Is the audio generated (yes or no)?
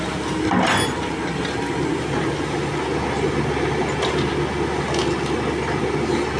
no